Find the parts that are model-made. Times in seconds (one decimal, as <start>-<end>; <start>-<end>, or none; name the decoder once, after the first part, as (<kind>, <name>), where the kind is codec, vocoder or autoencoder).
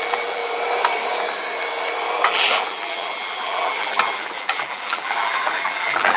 0.0-0.4 (vocoder, BigVGAN v2); 2.1-6.2